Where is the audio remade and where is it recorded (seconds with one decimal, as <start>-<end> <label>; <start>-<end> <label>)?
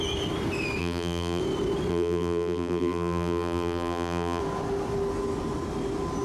0.0-0.8 recorded; 0.8-1.4 remade; 1.4-1.9 recorded; 1.9-4.4 remade; 4.4-6.2 recorded